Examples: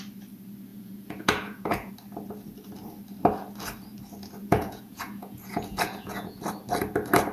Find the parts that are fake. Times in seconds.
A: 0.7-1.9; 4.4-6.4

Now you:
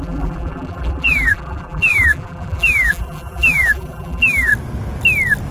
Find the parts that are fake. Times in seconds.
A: 0.0-4.5

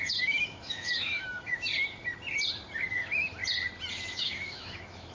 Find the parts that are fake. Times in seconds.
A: 0.0-1.7; 2.9-3.4; 3.9-5.1

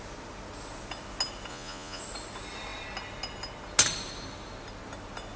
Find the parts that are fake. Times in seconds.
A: 1.5-2.0

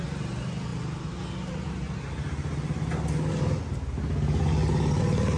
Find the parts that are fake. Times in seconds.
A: none

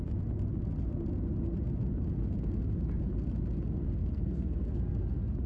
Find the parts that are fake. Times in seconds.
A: 4.0-4.8